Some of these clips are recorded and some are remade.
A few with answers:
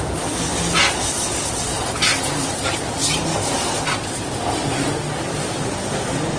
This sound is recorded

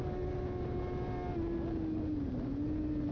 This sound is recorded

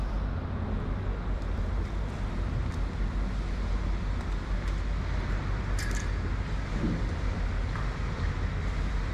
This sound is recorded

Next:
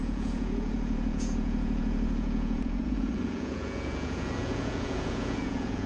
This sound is remade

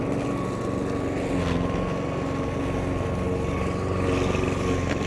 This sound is recorded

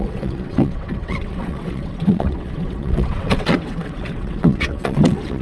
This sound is remade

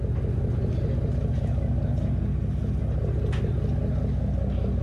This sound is recorded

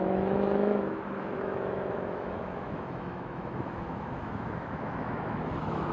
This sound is remade